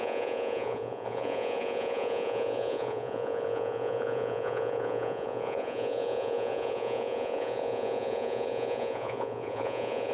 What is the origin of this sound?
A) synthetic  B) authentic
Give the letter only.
A